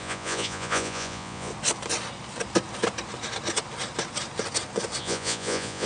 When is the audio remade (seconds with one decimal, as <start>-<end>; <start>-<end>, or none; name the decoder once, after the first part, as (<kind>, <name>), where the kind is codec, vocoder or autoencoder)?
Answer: 0.0-1.5 (vocoder, Vocos); 5.0-5.9